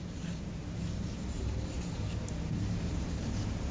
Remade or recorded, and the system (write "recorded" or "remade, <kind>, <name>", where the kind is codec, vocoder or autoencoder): remade, vocoder, BigVGAN v2